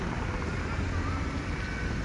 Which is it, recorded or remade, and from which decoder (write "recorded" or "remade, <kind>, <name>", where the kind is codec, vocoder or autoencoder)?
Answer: recorded